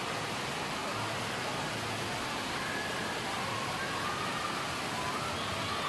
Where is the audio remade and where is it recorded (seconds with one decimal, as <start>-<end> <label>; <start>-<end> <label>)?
0.0-5.9 recorded